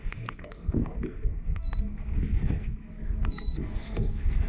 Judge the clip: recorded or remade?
remade